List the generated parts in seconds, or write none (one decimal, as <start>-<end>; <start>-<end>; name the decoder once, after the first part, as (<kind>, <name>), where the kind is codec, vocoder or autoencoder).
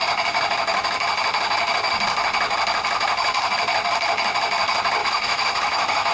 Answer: 5.0-6.1 (autoencoder, DAC-VAE)